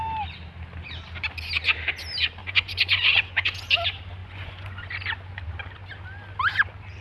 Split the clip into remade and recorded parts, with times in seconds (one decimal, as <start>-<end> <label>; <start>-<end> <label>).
0.0-2.4 recorded; 2.4-3.7 remade; 3.7-4.2 recorded; 4.2-4.9 remade; 4.9-7.0 recorded